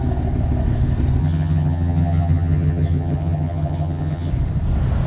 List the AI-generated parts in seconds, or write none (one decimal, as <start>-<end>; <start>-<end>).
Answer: 1.2-4.3